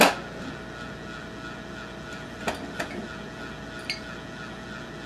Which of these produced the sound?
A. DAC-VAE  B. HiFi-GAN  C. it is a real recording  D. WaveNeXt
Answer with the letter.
C